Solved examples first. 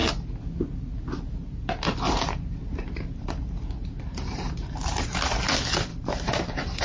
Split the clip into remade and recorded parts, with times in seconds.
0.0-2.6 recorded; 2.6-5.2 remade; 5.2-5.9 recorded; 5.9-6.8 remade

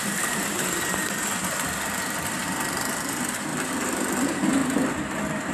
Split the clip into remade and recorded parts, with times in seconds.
0.0-1.1 remade; 1.1-3.5 recorded; 3.5-4.0 remade; 4.0-5.5 recorded